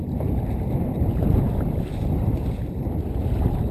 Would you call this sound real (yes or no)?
no